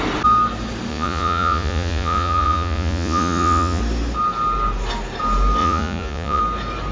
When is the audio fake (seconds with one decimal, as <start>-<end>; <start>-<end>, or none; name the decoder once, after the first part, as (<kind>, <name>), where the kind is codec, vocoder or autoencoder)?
0.9-3.8 (vocoder, Vocos); 5.6-6.4